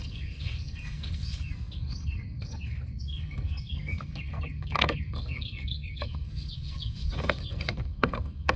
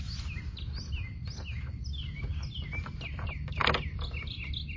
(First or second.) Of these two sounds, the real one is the second